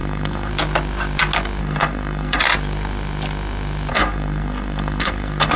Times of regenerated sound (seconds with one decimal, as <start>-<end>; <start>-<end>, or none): 0.0-0.5; 1.6-2.4; 3.9-5.6